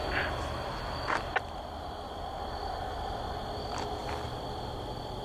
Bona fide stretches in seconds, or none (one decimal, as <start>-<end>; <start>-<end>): 0.0-5.2